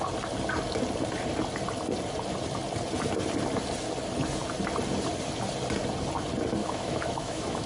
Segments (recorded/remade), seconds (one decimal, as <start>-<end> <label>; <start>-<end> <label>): 0.0-6.6 recorded; 6.6-7.7 remade